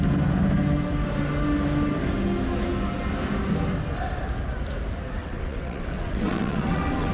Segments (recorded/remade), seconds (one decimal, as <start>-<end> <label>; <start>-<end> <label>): 0.0-5.2 recorded; 5.2-7.1 remade